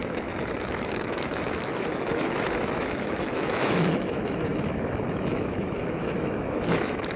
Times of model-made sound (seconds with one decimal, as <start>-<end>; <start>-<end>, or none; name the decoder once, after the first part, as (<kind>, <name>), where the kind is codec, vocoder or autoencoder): 0.0-7.2 (autoencoder, DAC-VAE)

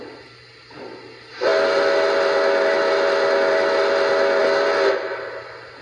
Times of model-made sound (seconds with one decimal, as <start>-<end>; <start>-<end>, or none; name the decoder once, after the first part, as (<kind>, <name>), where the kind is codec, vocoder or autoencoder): none

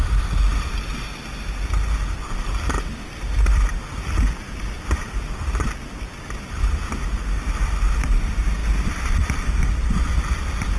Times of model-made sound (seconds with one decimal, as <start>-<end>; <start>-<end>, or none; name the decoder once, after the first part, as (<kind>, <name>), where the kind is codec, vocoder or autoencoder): none

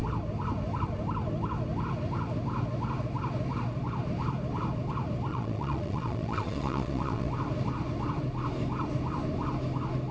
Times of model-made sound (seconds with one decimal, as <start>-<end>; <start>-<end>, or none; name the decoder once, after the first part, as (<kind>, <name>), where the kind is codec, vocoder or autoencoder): 5.3-7.3 (vocoder, Vocos)